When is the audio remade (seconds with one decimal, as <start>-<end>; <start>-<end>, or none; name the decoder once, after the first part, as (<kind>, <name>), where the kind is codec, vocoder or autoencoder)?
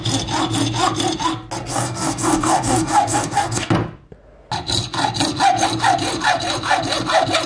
1.7-3.7 (codec, DAC)